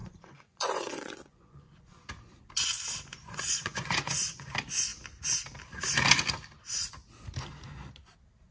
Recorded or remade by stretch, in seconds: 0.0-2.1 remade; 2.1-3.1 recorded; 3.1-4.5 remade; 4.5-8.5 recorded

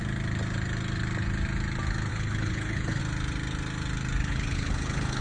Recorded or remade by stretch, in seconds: 0.0-2.1 recorded; 2.1-3.0 remade; 3.0-4.2 recorded; 4.2-5.2 remade

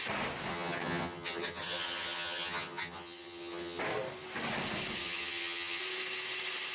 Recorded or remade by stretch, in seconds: 0.0-0.5 recorded; 0.5-3.8 remade; 3.8-5.0 recorded; 5.0-5.8 remade; 5.8-6.7 recorded

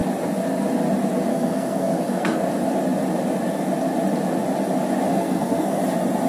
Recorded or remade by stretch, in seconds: 0.0-1.3 recorded; 1.3-2.4 remade; 2.4-5.1 recorded; 5.1-5.8 remade; 5.8-6.3 recorded